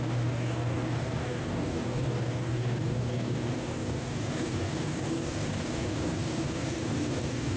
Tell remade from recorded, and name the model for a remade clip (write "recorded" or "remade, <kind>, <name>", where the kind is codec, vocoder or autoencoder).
remade, codec, DAC